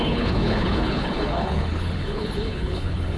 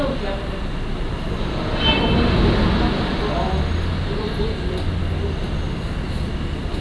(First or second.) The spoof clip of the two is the first